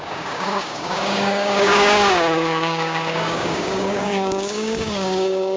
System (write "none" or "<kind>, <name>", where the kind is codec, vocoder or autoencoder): codec, DAC